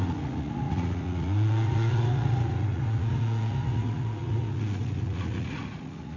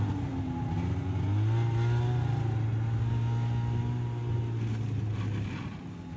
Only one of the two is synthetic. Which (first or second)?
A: first